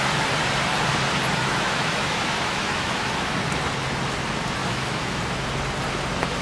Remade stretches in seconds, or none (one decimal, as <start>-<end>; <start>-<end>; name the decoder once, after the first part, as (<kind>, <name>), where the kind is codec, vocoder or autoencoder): 1.4-3.4 (autoencoder, DAC-VAE); 4.6-5.2